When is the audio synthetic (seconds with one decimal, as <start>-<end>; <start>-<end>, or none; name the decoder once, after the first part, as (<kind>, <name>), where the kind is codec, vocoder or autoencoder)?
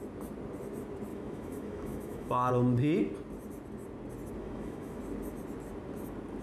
1.1-2.5 (autoencoder, DAC-VAE); 4.4-5.0